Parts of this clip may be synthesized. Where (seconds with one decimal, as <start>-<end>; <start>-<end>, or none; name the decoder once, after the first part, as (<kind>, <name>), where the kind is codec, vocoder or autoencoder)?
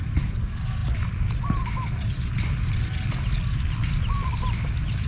none